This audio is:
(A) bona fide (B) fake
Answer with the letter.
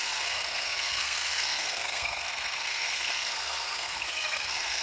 B